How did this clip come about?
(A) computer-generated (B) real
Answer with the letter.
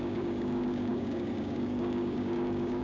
A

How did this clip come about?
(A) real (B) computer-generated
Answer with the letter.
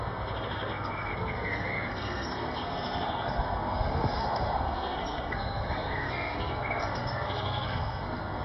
B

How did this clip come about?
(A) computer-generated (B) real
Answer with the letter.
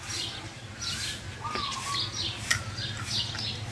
B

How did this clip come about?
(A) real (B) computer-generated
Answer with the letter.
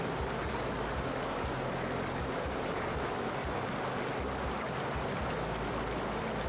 A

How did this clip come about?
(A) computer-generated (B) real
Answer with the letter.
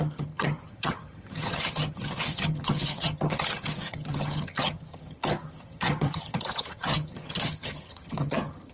A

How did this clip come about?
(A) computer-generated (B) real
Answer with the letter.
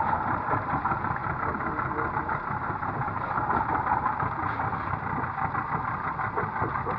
B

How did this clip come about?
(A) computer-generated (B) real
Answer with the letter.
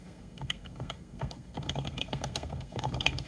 A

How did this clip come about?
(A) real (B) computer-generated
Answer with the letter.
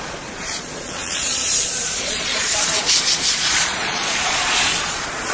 B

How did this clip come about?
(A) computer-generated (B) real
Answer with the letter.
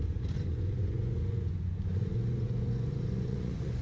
A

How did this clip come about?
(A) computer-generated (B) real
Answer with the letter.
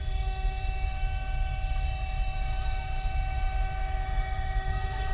A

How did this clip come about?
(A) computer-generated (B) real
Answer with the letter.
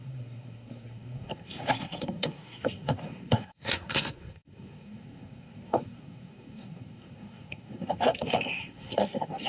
A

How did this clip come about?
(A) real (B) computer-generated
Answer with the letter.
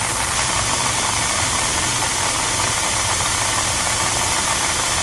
A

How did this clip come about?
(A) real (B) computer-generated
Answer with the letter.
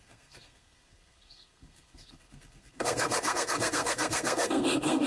B